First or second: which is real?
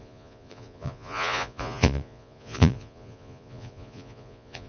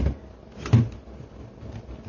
second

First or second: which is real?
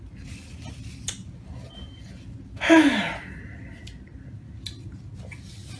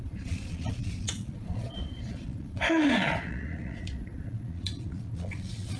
first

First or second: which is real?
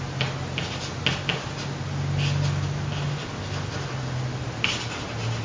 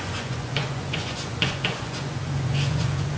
first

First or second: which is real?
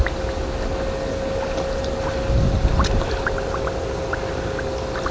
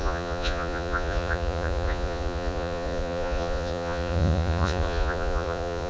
first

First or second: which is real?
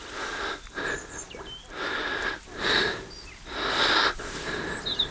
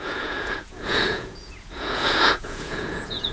first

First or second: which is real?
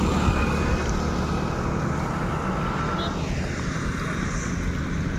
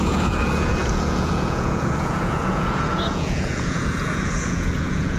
first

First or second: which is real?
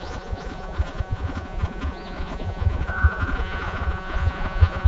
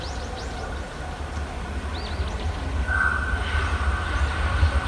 second